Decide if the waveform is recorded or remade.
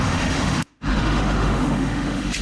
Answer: remade